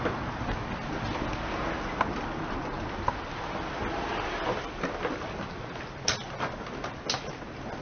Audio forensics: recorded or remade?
recorded